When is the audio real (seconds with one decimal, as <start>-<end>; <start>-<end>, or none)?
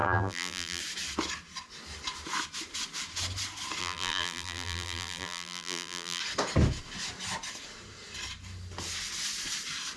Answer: 0.8-3.8; 6.2-10.0